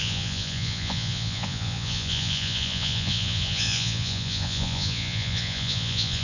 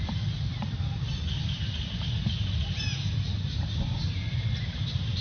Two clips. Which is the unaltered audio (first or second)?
second